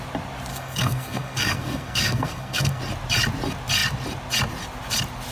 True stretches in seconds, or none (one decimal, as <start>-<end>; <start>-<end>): 0.0-0.5; 2.8-5.3